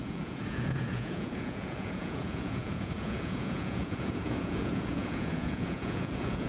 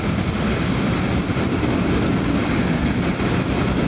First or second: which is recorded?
second